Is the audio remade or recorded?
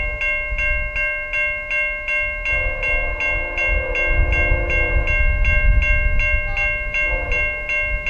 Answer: recorded